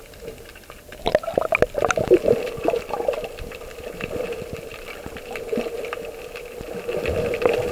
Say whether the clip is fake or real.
fake